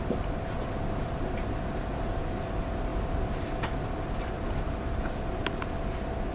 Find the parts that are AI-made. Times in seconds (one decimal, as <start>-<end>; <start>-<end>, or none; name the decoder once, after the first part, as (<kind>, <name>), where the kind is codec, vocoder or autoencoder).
none